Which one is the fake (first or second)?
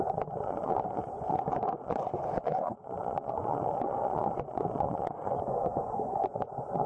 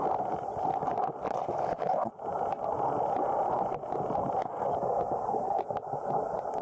first